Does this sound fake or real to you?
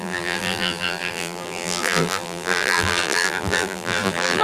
fake